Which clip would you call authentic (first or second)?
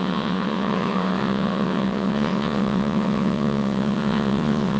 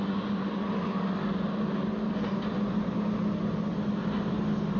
second